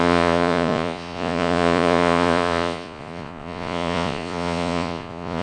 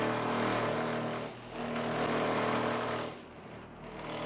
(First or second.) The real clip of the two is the second